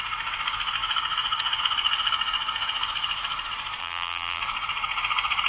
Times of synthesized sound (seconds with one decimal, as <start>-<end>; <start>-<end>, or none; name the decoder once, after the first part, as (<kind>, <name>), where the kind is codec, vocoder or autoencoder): 3.8-4.4 (vocoder, BigVGAN v2)